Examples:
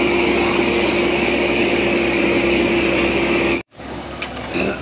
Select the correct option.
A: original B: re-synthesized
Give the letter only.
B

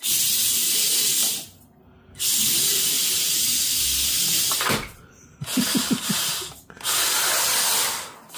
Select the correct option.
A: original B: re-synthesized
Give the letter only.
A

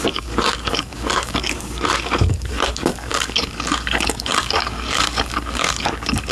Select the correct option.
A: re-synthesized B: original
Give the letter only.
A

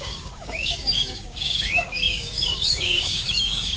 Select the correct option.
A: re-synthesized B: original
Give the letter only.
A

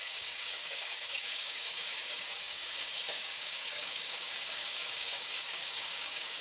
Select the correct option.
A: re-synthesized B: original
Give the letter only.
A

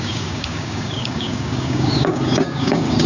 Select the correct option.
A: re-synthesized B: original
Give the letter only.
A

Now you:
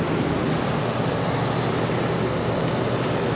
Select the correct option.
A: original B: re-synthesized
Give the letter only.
A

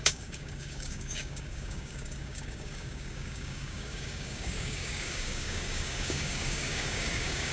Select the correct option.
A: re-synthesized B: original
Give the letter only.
A